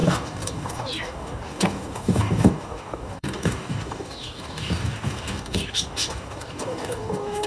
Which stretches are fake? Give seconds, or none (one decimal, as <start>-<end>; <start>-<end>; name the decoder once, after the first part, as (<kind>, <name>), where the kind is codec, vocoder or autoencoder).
0.0-7.5 (codec, DAC)